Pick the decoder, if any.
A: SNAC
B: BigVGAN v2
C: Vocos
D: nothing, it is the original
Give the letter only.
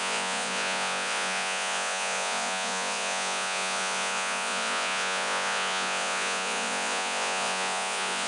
C